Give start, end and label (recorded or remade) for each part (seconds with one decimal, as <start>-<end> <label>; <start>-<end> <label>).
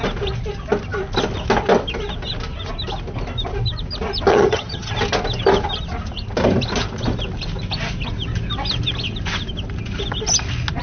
0.0-4.3 recorded; 4.3-4.9 remade; 4.9-10.8 recorded